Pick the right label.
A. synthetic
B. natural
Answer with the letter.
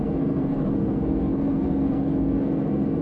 A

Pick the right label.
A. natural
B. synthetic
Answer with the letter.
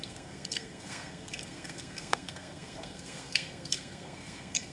B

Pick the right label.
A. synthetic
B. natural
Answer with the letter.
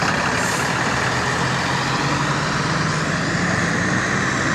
B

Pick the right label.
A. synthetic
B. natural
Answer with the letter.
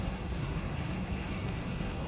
A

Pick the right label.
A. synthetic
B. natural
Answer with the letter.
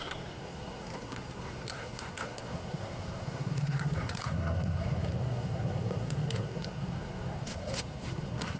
A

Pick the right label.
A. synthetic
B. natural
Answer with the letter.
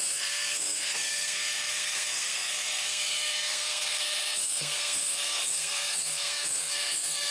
A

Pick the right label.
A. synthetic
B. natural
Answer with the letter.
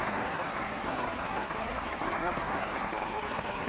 A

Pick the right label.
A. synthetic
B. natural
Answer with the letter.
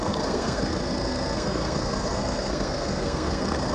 A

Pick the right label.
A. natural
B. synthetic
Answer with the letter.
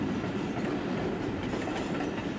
A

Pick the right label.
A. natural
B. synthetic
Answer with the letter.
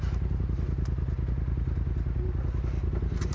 A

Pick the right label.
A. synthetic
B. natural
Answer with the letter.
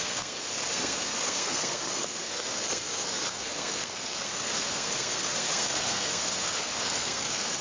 A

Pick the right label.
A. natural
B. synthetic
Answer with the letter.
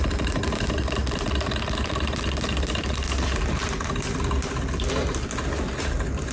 A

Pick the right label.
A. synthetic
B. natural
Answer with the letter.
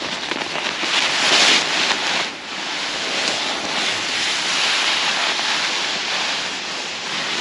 B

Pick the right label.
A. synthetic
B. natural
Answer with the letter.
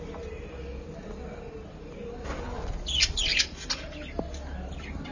B